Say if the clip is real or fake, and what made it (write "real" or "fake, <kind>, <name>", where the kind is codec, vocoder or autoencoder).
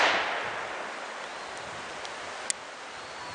real